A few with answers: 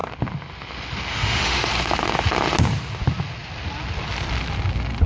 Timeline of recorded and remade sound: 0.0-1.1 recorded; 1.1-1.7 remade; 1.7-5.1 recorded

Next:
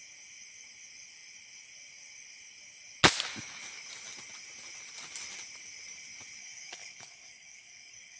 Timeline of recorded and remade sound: 0.0-6.4 recorded; 6.4-8.2 remade

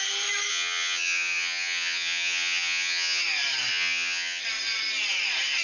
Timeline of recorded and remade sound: 0.0-0.5 recorded; 0.5-3.2 remade; 3.2-3.7 recorded; 3.7-4.4 remade; 4.4-5.6 recorded

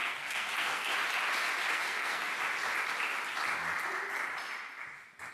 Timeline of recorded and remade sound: 0.0-0.9 remade; 0.9-1.7 recorded; 1.7-2.3 remade; 2.3-5.3 recorded